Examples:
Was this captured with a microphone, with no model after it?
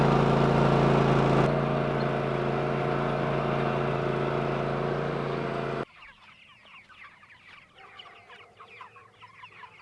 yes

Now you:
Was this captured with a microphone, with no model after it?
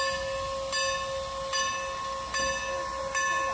yes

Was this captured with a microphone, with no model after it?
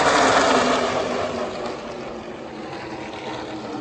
yes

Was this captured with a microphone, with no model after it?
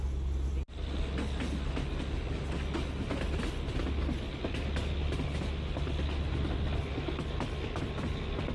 yes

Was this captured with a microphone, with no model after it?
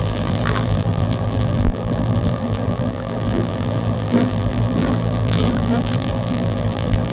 no